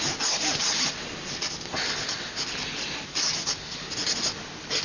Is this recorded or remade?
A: recorded